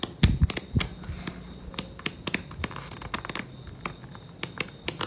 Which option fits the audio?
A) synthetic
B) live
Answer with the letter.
B